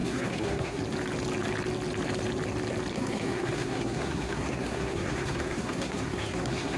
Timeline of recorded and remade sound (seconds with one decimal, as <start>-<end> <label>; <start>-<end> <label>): 0.0-0.8 remade; 0.8-2.9 recorded; 2.9-6.8 remade